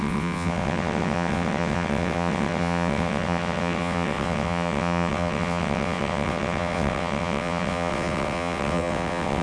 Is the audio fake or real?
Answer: fake